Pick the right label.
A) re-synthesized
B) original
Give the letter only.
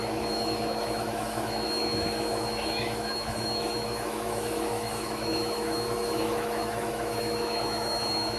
A